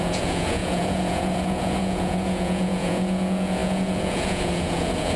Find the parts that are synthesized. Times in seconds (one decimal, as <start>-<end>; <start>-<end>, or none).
0.0-5.2